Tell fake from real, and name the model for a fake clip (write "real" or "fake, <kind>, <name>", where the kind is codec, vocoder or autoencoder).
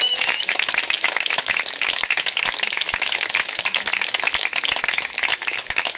fake, autoencoder, DAC-VAE